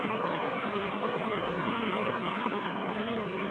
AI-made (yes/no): yes